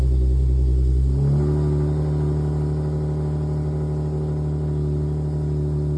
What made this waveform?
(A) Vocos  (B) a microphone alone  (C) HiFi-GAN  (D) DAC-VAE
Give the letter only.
B